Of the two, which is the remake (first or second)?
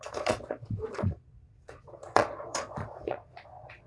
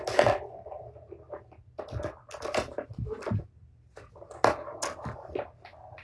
first